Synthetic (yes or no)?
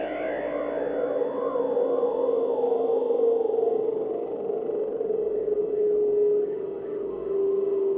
no